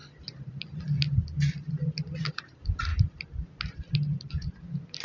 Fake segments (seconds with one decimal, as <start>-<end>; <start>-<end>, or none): none